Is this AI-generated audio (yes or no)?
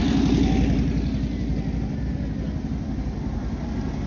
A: no